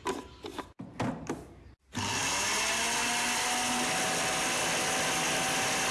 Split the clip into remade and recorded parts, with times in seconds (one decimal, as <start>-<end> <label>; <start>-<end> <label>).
0.0-5.9 recorded